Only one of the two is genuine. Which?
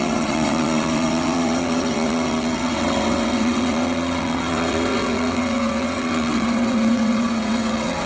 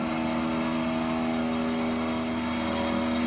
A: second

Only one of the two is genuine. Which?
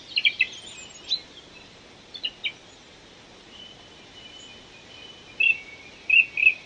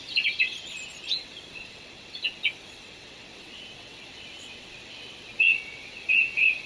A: first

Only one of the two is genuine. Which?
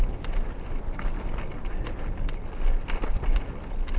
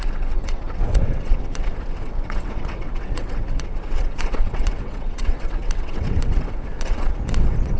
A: first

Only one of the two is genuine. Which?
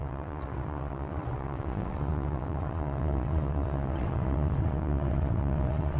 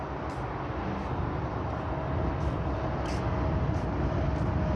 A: second